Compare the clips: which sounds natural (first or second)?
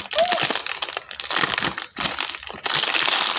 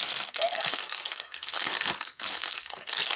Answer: first